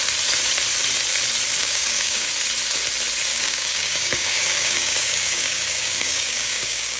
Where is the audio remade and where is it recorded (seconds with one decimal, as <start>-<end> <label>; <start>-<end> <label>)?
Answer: 0.0-1.6 recorded; 1.6-2.3 remade; 2.3-3.3 recorded; 3.3-7.0 remade